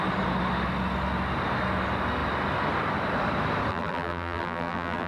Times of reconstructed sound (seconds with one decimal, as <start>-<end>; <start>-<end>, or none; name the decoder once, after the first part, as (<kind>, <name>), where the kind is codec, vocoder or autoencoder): 3.7-5.1 (vocoder, BigVGAN v2)